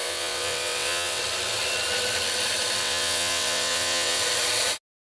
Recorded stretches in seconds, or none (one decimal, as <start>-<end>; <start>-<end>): 1.2-2.8; 4.2-5.0